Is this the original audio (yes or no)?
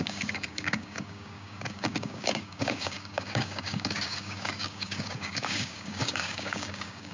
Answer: no